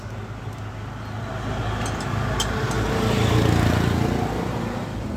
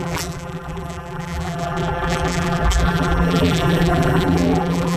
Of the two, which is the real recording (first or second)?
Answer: first